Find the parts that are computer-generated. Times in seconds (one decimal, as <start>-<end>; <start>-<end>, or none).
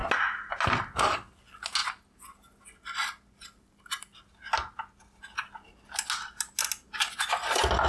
none